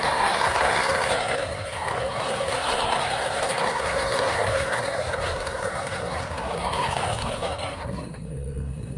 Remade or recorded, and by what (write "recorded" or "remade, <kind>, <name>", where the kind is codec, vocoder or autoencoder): remade, codec, SNAC